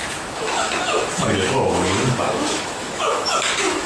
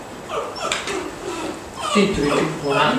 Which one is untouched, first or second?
second